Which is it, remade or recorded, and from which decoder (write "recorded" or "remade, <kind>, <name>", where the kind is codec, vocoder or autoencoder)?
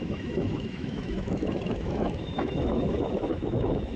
remade, autoencoder, DAC-VAE